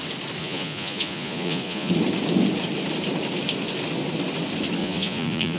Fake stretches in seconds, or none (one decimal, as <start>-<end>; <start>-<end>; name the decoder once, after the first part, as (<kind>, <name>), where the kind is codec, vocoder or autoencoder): 0.4-1.9 (vocoder, Vocos); 4.8-5.6